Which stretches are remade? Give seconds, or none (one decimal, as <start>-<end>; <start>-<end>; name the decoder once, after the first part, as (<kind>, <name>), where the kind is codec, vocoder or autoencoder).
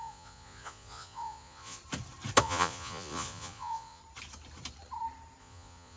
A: 0.0-1.8 (vocoder, Vocos); 2.4-4.0; 5.4-6.0